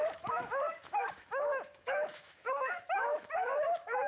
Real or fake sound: fake